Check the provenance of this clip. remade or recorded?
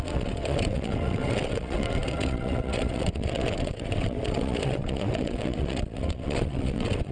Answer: remade